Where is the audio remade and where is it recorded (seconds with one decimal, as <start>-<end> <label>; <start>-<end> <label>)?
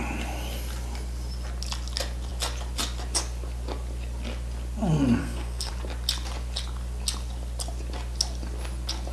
0.0-5.2 recorded; 5.2-5.7 remade; 5.7-9.1 recorded